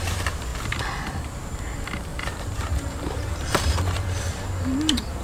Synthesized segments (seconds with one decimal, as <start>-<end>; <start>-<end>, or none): 0.0-0.5; 1.1-5.2

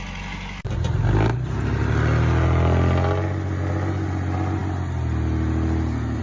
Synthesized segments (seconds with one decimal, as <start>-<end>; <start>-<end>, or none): none

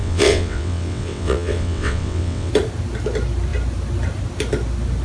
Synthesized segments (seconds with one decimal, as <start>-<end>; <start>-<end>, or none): 0.0-2.5

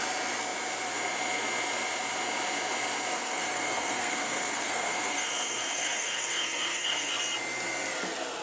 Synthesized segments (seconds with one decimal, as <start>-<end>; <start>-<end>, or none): 3.1-7.1

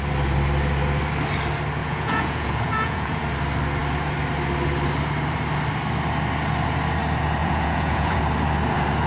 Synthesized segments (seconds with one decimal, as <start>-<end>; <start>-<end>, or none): 1.8-3.2; 7.4-8.2

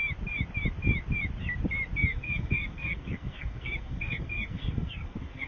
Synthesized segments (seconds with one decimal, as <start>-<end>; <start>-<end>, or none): 2.0-5.5